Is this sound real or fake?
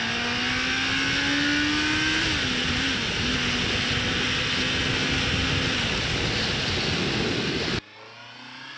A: real